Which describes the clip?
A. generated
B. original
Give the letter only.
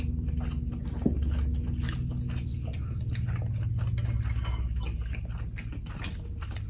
B